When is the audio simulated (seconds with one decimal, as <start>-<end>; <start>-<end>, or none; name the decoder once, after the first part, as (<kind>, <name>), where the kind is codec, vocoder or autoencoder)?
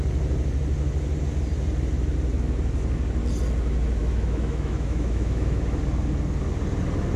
4.0-5.8 (autoencoder, DAC-VAE)